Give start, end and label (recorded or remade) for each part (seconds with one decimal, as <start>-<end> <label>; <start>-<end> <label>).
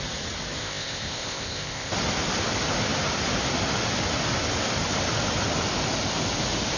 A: 0.0-0.6 recorded; 0.6-1.9 remade; 1.9-6.8 recorded